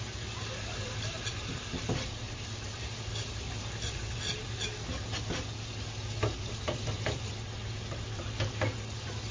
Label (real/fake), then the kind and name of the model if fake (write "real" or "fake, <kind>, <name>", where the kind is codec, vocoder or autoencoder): real